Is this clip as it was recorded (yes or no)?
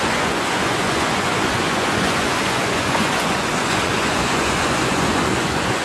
no